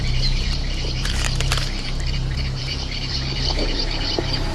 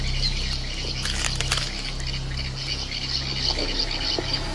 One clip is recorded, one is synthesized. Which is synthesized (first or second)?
first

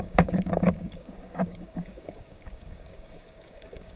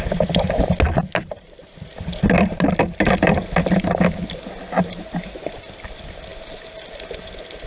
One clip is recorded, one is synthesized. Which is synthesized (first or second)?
first